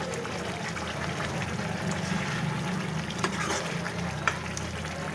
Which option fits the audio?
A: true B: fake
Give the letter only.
A